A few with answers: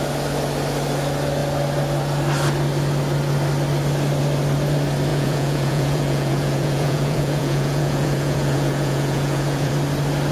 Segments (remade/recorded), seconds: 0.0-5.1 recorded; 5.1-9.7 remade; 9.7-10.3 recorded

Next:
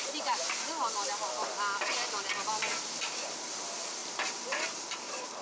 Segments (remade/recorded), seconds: 0.0-1.2 remade; 1.2-3.0 recorded; 3.0-5.4 remade